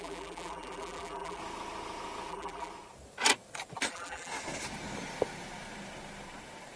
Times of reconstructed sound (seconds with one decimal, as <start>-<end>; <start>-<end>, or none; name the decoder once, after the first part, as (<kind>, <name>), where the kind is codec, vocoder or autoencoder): 0.0-1.4 (vocoder, BigVGAN v2); 2.3-2.7; 3.9-4.3